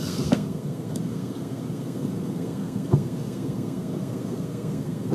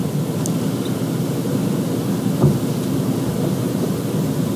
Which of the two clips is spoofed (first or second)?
first